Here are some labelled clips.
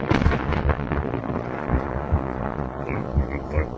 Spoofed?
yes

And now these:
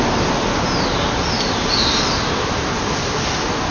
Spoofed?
no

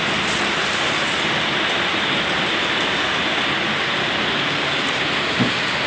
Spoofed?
no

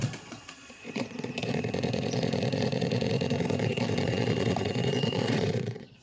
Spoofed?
yes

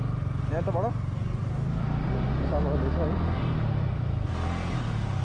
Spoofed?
no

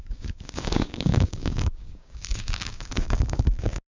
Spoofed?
yes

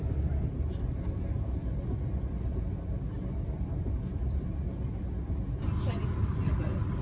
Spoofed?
no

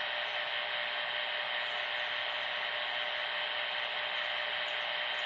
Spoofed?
no